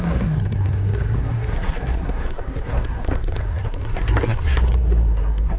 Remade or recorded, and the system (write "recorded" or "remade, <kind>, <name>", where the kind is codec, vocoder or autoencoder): remade, codec, SNAC